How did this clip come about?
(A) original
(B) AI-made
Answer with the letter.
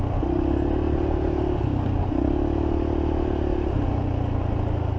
A